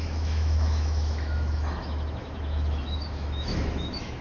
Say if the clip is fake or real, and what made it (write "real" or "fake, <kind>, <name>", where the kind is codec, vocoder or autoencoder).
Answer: fake, autoencoder, DAC-VAE